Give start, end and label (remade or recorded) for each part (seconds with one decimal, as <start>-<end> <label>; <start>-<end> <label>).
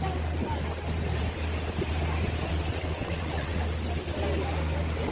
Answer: 0.0-2.5 recorded; 2.5-3.6 remade; 3.6-5.1 recorded